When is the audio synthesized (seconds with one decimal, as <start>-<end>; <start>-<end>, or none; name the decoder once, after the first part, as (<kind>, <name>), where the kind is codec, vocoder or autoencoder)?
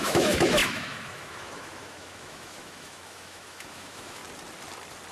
0.0-4.2 (autoencoder, DAC-VAE)